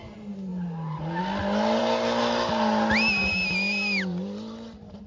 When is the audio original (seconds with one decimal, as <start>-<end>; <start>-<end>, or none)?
0.0-5.1

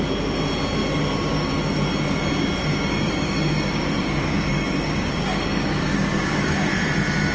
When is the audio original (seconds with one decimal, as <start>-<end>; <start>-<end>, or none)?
0.0-0.8; 1.5-2.6; 6.7-7.3

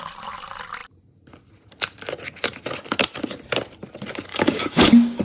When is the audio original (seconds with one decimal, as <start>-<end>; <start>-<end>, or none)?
0.0-4.3

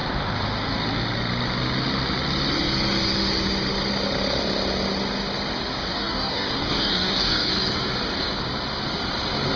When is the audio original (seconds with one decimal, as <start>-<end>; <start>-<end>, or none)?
0.0-5.9; 7.5-9.6

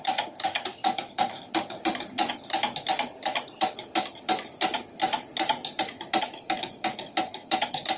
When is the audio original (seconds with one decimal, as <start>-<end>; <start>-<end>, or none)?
0.0-8.0